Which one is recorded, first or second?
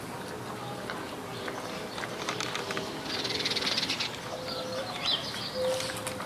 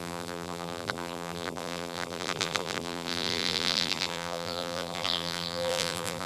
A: first